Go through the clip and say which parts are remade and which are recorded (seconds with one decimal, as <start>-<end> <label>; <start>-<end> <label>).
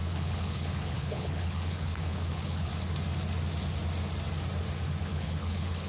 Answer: 0.0-2.7 remade; 2.7-5.0 recorded; 5.0-5.9 remade